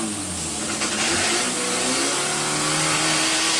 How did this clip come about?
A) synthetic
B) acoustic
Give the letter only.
B